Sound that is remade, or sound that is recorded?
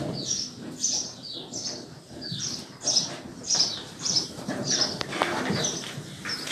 remade